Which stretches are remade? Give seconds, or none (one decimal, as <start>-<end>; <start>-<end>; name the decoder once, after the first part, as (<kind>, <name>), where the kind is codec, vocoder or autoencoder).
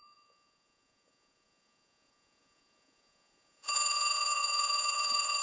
0.0-5.4 (vocoder, Vocos)